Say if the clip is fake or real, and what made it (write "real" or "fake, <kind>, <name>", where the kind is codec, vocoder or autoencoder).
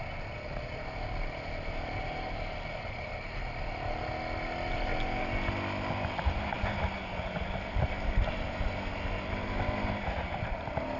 real